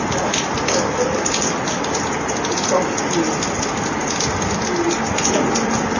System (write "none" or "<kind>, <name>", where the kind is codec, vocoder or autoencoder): none